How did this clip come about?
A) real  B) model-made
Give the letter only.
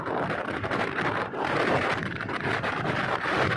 B